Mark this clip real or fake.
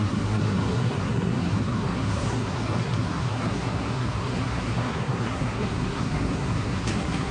fake